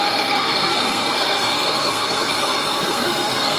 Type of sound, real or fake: fake